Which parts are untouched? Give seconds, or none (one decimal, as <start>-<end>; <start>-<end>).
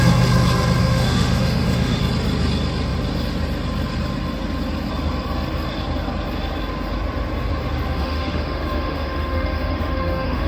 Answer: 0.0-0.8; 2.0-7.9